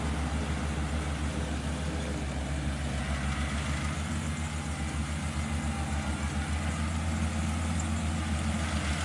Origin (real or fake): real